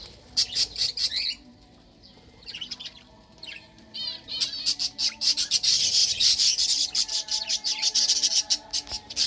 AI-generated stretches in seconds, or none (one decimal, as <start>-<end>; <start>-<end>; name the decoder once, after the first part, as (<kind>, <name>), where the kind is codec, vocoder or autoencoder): 0.0-9.3 (vocoder, BigVGAN v2)

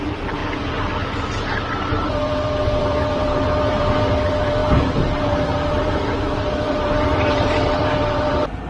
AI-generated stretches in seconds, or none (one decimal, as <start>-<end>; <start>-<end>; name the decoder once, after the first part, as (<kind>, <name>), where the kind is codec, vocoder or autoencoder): 0.0-0.4 (vocoder, BigVGAN v2); 2.1-8.7

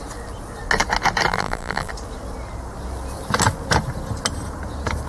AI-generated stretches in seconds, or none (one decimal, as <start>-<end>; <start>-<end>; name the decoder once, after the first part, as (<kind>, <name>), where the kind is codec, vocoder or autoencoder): 1.3-1.9 (vocoder, BigVGAN v2)